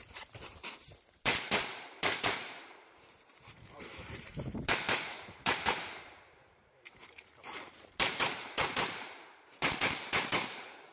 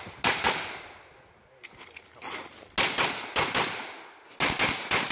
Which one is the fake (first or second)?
first